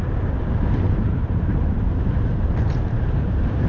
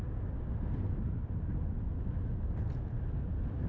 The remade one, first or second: first